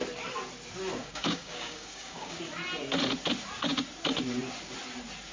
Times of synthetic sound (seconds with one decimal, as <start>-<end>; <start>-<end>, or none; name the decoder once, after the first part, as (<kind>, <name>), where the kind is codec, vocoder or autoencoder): 1.0-2.4 (codec, DAC)